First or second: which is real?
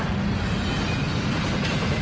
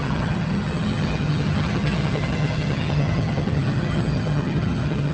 first